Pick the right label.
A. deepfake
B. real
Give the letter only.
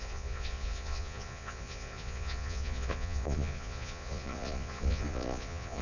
A